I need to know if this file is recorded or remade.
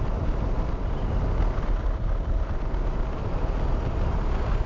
recorded